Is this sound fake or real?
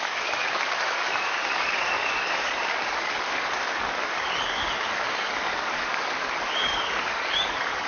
fake